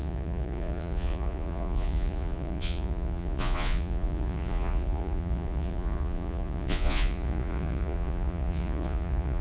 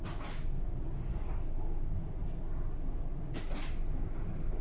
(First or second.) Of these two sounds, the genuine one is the second